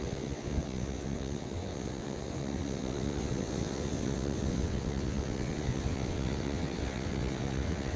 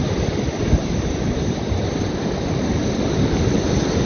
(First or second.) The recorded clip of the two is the second